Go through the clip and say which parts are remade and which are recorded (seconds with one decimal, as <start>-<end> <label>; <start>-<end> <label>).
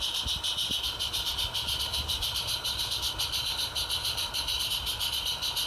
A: 0.0-1.9 recorded; 1.9-3.0 remade; 3.0-4.0 recorded; 4.0-4.7 remade; 4.7-5.7 recorded